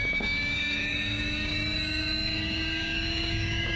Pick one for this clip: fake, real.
fake